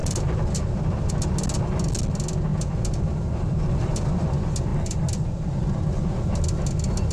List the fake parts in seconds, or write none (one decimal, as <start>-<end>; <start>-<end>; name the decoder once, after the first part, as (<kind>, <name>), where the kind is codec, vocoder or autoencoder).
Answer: 0.0-1.1 (vocoder, BigVGAN v2); 2.5-4.3; 4.7-5.8